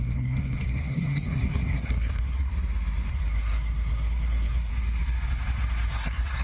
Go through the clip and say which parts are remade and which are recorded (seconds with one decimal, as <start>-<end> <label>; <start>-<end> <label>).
0.0-2.5 remade; 2.5-3.1 recorded; 3.1-4.7 remade; 4.7-5.9 recorded; 5.9-6.4 remade